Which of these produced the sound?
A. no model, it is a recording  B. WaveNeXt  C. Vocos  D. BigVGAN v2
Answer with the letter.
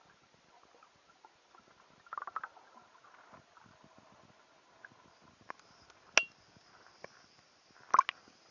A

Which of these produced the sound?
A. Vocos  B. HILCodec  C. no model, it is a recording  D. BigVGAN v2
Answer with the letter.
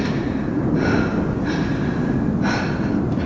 C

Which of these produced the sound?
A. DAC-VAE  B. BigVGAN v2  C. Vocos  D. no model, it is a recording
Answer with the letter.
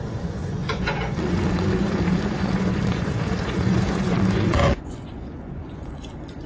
C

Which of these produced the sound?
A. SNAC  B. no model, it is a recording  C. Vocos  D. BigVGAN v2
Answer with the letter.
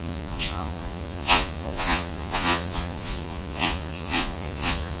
C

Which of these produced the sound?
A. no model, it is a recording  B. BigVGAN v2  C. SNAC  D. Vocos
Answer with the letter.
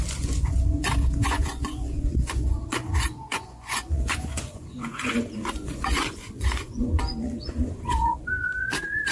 D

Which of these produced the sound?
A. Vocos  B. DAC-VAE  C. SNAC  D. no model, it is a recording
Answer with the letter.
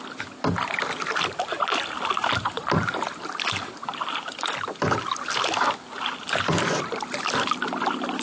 D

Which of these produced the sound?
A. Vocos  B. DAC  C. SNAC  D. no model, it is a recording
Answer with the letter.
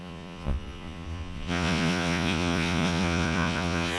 A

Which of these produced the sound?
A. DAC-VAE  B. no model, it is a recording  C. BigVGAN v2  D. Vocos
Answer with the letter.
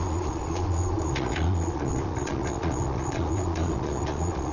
D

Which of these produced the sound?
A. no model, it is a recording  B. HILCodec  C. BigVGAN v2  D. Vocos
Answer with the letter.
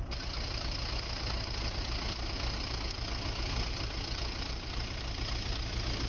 A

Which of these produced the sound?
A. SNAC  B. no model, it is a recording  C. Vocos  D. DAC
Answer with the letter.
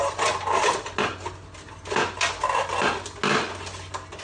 B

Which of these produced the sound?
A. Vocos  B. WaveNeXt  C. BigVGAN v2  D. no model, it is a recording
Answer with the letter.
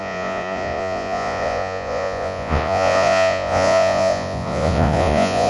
A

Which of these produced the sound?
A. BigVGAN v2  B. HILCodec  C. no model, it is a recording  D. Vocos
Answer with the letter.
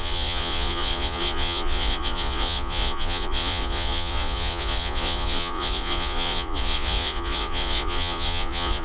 D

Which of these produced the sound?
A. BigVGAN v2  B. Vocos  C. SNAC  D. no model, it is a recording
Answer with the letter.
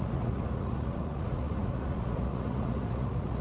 B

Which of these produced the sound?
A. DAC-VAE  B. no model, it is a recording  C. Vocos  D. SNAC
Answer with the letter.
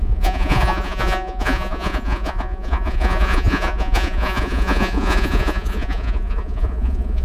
C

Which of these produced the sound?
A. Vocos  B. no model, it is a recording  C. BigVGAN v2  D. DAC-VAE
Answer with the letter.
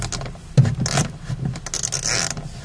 B